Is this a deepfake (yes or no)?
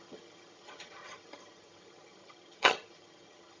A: yes